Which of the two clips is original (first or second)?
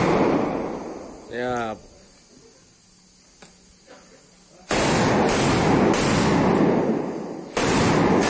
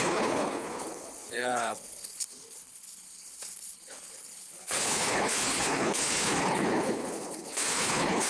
first